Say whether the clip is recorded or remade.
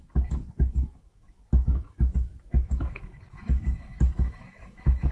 remade